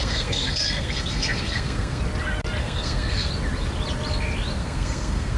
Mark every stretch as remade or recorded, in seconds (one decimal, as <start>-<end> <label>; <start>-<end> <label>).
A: 0.0-2.0 remade; 2.0-2.6 recorded; 2.6-3.3 remade; 3.3-4.6 recorded; 4.6-5.4 remade